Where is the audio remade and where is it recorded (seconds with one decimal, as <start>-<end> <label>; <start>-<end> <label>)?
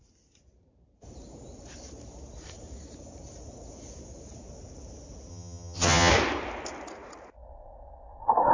0.0-5.3 recorded; 5.3-6.1 remade; 6.1-8.5 recorded